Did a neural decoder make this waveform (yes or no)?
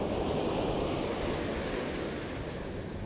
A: no